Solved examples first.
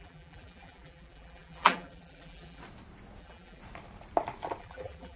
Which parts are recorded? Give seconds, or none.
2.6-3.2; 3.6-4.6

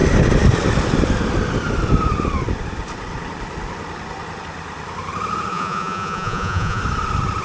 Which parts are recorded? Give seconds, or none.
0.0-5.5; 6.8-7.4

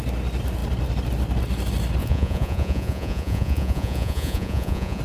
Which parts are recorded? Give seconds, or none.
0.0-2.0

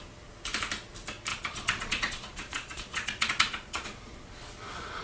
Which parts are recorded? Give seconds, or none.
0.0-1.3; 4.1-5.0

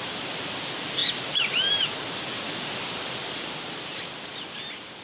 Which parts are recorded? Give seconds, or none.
0.0-5.0

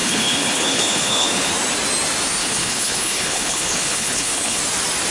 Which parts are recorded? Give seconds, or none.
1.5-2.4; 4.6-5.1